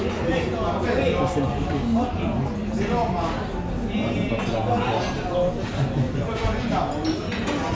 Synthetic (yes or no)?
no